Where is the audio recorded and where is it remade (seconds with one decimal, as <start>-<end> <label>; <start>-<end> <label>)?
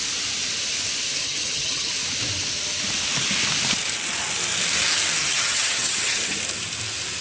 0.0-1.2 recorded; 1.2-1.9 remade; 1.9-5.2 recorded; 5.2-6.4 remade; 6.4-7.2 recorded